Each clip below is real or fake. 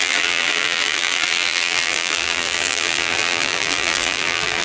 fake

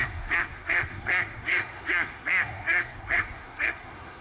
fake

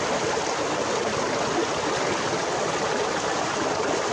real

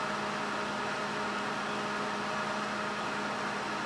real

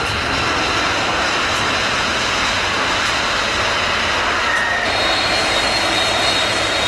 fake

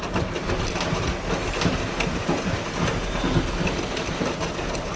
real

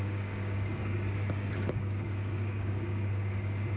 fake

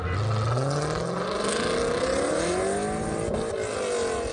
real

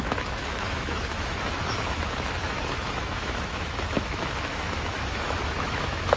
fake